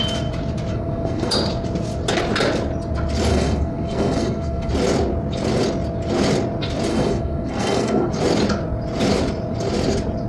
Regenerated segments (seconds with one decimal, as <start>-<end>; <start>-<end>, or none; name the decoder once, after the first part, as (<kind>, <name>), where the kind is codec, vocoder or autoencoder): 0.7-1.3 (codec, SNAC); 3.3-4.7; 6.9-8.1